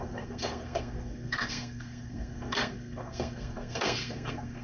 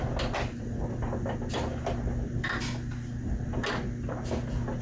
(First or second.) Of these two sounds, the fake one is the first